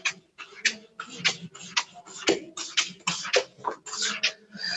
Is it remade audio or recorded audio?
recorded